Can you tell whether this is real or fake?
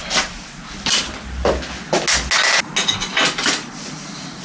real